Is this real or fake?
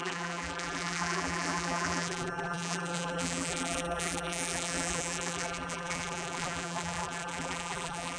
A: fake